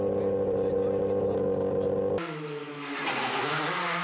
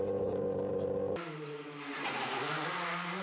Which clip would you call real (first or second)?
first